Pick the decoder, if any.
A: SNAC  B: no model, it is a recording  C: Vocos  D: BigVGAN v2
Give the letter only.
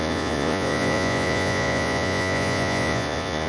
C